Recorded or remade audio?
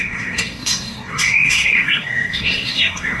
remade